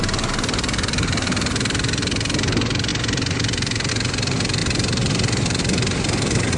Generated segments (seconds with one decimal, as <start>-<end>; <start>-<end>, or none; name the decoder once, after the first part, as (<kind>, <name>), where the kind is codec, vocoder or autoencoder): none